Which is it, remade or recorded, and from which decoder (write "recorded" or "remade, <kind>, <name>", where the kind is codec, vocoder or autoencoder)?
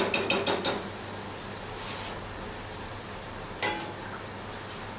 recorded